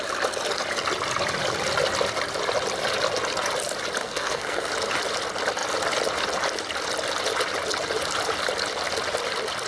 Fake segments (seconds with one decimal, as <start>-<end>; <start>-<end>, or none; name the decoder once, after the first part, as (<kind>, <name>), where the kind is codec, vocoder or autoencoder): 4.0-4.7 (codec, SNAC)